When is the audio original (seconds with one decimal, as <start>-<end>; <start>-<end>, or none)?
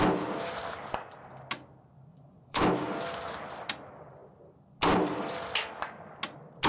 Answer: 0.0-2.1; 2.6-6.7